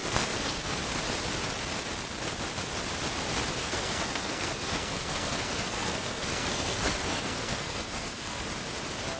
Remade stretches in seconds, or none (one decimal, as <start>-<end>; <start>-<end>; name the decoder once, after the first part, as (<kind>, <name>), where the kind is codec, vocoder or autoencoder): 0.0-0.8 (codec, SNAC); 3.6-8.5